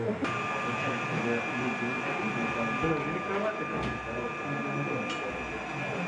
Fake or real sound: real